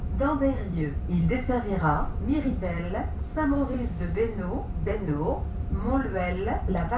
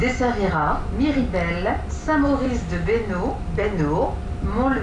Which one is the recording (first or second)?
second